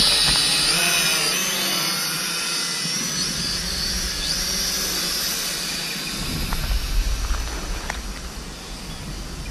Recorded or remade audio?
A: recorded